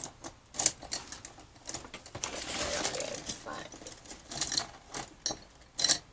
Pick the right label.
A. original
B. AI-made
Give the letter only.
A